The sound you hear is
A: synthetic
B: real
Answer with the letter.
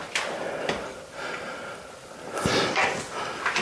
B